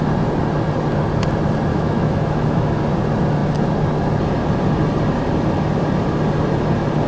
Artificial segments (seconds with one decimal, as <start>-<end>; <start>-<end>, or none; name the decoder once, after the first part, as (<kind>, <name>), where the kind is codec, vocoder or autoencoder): 1.7-2.8 (autoencoder, DAC-VAE)